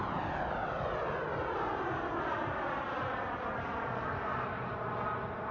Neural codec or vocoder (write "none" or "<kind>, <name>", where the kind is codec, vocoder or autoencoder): none